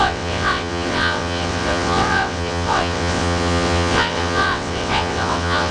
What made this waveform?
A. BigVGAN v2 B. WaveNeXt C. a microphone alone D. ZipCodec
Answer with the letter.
B